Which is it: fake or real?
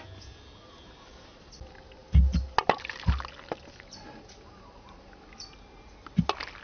real